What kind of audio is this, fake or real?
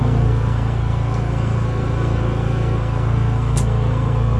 fake